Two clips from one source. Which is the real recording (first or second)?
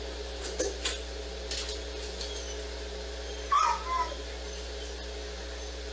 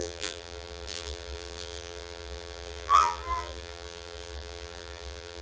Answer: first